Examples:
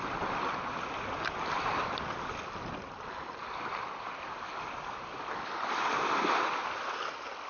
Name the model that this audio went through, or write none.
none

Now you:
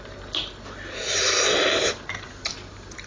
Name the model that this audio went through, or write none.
none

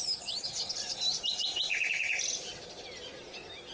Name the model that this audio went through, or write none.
none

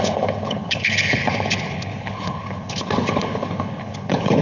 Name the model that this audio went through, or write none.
codec, HILCodec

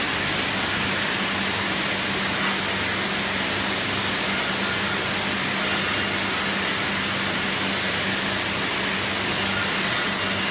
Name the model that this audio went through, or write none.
none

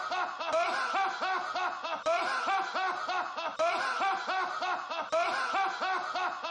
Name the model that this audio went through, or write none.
none